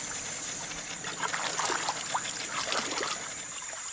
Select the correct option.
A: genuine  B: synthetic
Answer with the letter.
A